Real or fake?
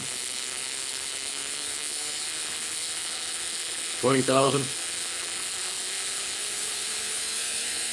fake